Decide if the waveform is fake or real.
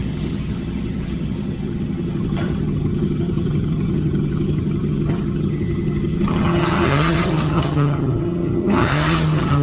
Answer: fake